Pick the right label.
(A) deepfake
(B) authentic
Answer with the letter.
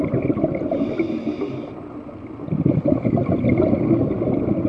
B